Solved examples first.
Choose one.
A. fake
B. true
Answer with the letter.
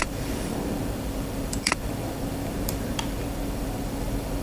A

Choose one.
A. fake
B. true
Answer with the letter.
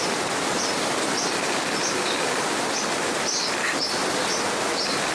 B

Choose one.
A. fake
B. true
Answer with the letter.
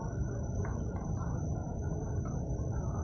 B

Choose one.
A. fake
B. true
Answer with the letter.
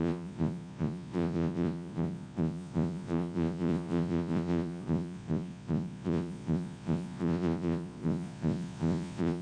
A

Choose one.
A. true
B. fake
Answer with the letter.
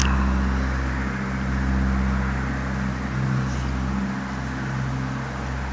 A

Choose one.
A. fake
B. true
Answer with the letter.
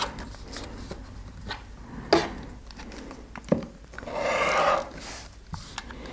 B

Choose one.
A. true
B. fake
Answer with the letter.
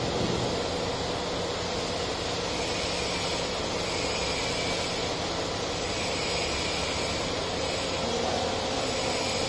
A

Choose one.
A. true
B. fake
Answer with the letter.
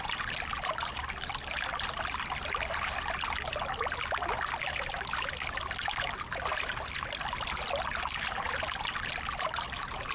A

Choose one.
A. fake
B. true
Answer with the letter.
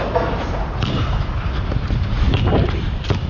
B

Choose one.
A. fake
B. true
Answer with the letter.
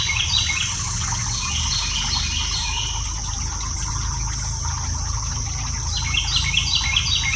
B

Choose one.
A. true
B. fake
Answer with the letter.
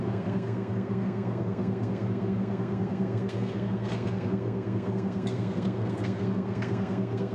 B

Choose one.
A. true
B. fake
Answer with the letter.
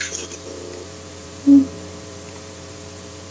B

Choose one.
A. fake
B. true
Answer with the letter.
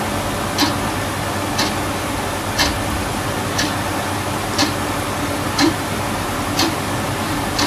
B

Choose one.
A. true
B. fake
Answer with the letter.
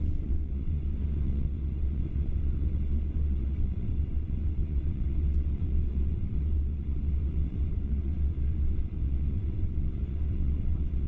B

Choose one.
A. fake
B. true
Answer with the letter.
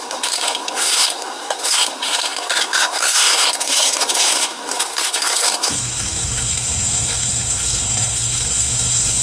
A